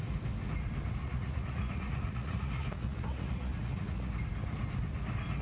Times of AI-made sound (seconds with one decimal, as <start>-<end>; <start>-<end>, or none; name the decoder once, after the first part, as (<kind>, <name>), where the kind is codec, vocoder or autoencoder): 1.0-4.2 (vocoder, Vocos)